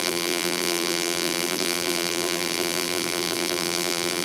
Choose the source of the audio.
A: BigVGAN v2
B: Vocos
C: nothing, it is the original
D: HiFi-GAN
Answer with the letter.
A